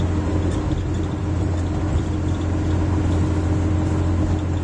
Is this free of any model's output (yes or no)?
yes